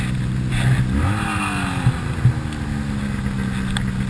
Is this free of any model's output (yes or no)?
yes